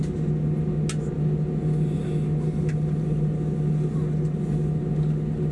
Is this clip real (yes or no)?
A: yes